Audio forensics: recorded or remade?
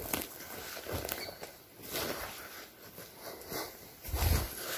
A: recorded